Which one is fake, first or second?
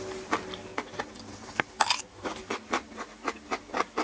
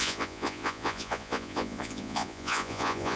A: second